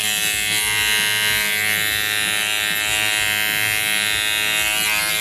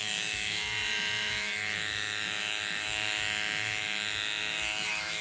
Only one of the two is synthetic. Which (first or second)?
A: second